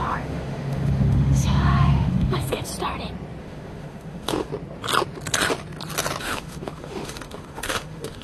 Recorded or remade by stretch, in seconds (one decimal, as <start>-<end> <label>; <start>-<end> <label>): 0.0-2.7 remade; 2.7-3.4 recorded; 3.4-4.5 remade; 4.5-6.2 recorded; 6.2-8.2 remade